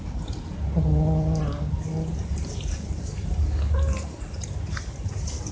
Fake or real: real